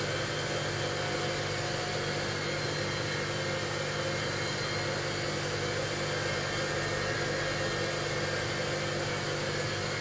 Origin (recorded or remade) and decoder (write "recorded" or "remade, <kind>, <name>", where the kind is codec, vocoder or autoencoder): recorded